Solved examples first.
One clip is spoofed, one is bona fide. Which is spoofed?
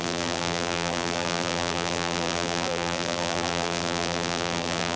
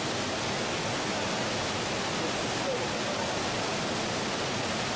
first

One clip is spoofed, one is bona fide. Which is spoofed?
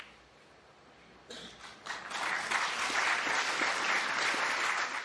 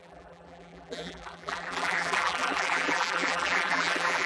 second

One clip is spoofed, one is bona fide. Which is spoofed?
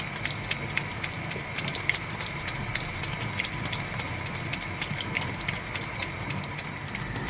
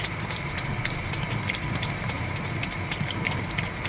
second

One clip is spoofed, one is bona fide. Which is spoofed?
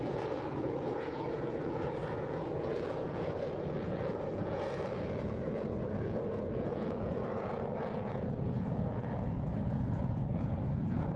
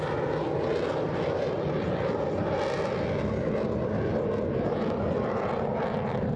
first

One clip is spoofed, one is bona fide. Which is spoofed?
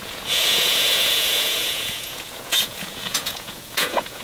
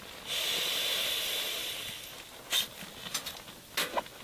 first